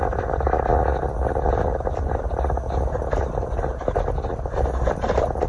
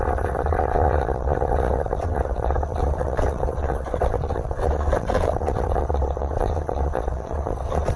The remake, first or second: second